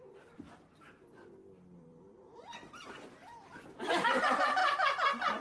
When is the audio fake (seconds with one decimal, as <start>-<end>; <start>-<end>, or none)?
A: none